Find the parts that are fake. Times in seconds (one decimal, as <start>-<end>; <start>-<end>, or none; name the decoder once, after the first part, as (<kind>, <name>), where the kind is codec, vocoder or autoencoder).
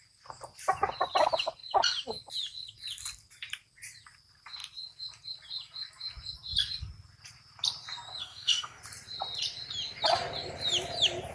8.2-8.8 (codec, DAC)